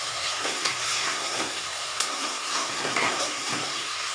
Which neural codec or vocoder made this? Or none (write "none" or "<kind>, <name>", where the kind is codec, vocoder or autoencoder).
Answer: codec, SNAC